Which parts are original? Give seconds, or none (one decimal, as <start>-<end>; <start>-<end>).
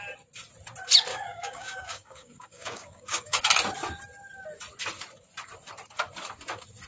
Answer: 0.0-1.1; 3.4-6.9